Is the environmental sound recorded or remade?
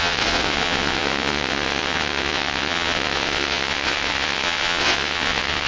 remade